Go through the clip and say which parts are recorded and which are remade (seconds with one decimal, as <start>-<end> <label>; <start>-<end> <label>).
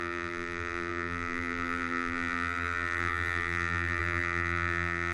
0.0-5.1 remade